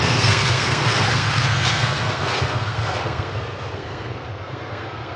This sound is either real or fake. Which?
fake